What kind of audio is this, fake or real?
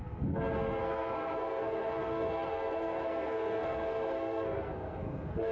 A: fake